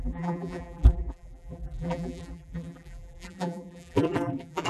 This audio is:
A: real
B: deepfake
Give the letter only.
B